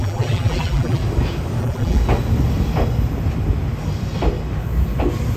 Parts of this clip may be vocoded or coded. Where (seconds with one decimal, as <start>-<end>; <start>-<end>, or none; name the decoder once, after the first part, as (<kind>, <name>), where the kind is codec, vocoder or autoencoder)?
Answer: 0.0-1.0 (vocoder, BigVGAN v2); 1.6-2.0